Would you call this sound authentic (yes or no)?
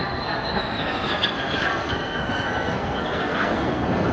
no